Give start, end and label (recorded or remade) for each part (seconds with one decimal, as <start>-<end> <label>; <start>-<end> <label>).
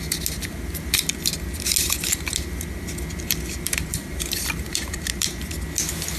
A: 0.0-3.9 recorded; 3.9-5.4 remade; 5.4-6.2 recorded